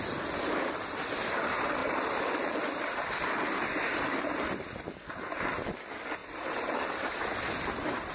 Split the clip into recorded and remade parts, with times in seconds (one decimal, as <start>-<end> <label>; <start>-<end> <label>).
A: 0.0-8.1 recorded